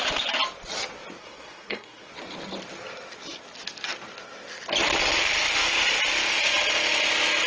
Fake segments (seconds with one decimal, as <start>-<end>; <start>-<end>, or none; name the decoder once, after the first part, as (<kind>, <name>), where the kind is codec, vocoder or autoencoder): 1.2-2.1 (codec, SNAC)